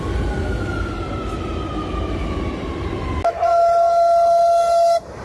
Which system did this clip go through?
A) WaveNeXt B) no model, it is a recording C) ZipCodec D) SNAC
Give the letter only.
B